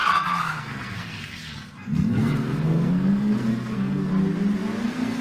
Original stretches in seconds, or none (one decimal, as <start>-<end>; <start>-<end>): 4.1-4.8